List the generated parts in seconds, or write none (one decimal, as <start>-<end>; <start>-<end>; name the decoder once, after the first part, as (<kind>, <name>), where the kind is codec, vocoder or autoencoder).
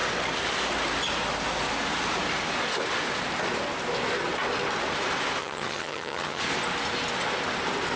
5.4-6.4 (vocoder, HiFi-GAN)